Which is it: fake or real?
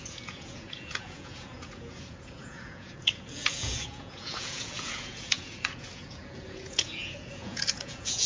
fake